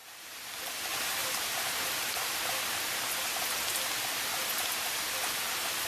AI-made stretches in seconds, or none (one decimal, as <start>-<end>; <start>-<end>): 0.0-0.7; 1.2-2.4